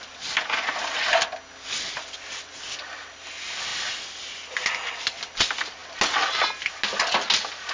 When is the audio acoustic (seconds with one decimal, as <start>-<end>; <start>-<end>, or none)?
0.0-7.7